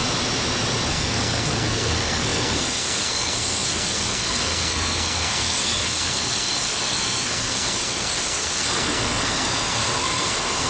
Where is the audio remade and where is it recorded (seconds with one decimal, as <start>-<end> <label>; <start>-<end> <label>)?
0.0-0.9 recorded; 0.9-10.7 remade

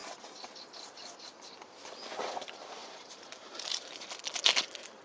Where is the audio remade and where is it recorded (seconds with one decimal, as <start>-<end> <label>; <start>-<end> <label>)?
0.0-2.8 recorded; 2.8-4.1 remade; 4.1-5.0 recorded

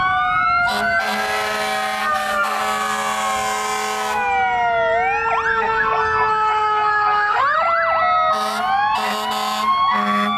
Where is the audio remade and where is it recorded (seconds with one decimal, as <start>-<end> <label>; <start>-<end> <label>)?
0.0-2.0 recorded; 2.0-2.6 remade; 2.6-5.5 recorded; 5.5-7.4 remade; 7.4-10.4 recorded

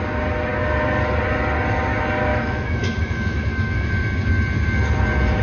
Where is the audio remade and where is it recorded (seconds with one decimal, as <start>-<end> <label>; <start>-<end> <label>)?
0.0-2.3 recorded; 2.3-3.9 remade; 3.9-5.4 recorded

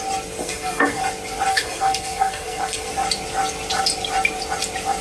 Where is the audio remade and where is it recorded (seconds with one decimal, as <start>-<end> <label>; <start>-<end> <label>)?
0.0-0.4 recorded; 0.4-1.0 remade; 1.0-1.5 recorded; 1.5-2.9 remade; 2.9-5.0 recorded

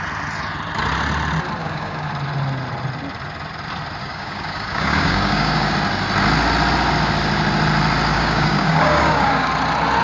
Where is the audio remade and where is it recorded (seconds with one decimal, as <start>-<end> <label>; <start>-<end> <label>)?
0.0-1.6 recorded; 1.6-2.1 remade; 2.1-4.0 recorded; 4.0-5.7 remade; 5.7-8.1 recorded; 8.1-9.5 remade; 9.5-10.0 recorded

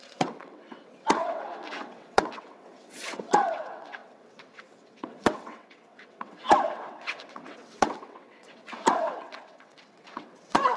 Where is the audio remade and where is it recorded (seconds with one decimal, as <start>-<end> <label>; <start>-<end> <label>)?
0.0-10.8 remade